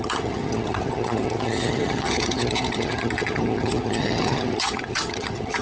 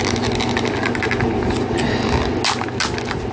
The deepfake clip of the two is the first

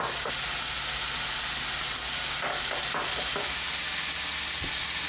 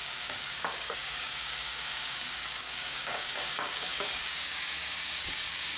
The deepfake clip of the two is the second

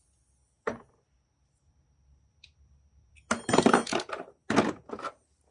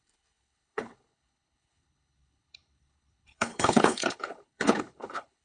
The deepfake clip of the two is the second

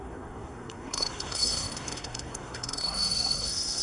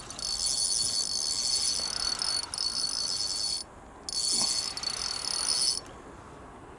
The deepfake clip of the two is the first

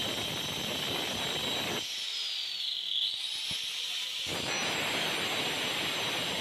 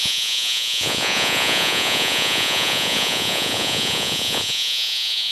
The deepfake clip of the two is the second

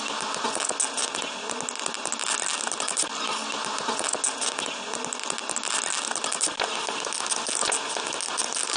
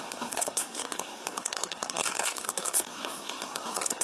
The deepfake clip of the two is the second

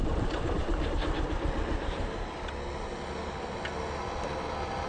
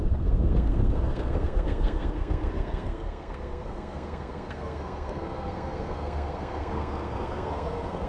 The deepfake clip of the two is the second